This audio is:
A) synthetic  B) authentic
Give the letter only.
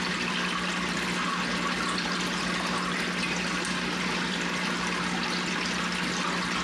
B